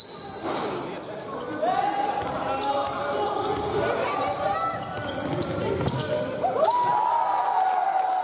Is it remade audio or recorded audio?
recorded